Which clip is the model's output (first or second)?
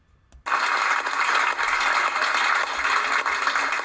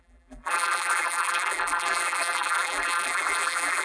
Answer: second